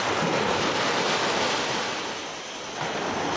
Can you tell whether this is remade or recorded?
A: recorded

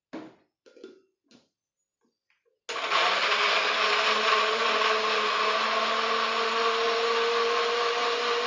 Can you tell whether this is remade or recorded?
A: recorded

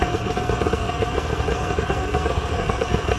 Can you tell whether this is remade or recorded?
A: remade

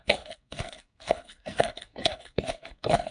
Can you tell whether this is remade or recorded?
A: remade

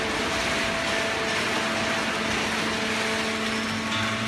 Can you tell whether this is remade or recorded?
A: recorded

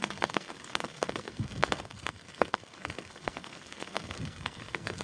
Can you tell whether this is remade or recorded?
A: remade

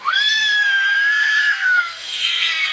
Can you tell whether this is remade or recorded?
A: remade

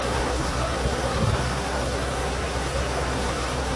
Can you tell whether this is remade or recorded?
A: remade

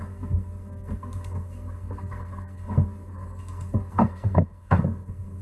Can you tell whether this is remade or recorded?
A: remade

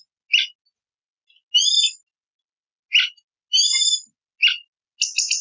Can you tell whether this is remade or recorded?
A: recorded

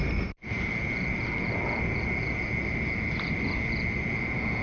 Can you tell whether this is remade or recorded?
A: recorded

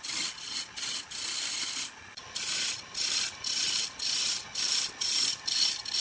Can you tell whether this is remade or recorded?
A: recorded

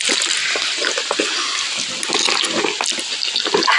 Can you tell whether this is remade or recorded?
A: recorded